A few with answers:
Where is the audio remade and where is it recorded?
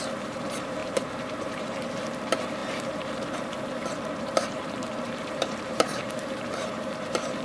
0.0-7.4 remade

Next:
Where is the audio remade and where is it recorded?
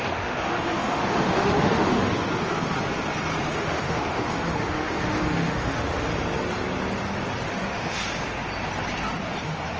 0.0-2.0 remade; 2.0-3.6 recorded; 3.6-6.1 remade; 6.1-7.5 recorded; 7.5-8.0 remade; 8.0-9.4 recorded; 9.4-9.8 remade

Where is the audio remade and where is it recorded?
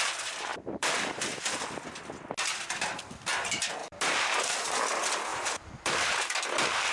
0.0-0.5 recorded; 0.5-1.2 remade; 1.2-3.8 recorded; 3.8-4.8 remade; 4.8-5.3 recorded; 5.3-6.1 remade; 6.1-6.9 recorded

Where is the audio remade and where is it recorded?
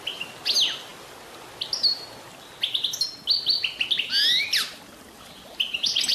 0.0-6.1 recorded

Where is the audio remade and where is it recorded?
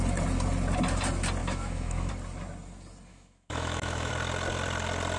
0.0-1.4 recorded; 1.4-2.1 remade; 2.1-3.1 recorded; 3.1-4.1 remade; 4.1-5.2 recorded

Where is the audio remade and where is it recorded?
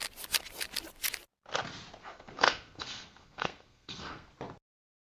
0.0-2.0 recorded; 2.0-4.3 remade; 4.3-5.1 recorded